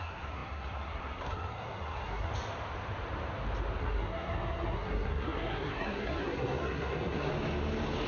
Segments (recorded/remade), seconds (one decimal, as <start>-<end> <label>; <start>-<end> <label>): 0.0-2.3 remade; 2.3-3.8 recorded; 3.8-7.3 remade; 7.3-8.1 recorded